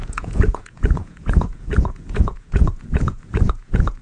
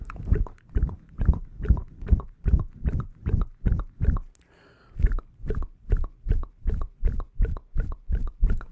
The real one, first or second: second